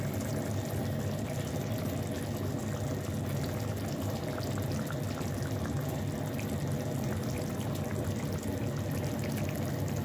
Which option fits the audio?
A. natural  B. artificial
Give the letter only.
A